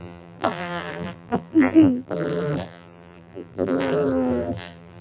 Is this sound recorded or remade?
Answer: remade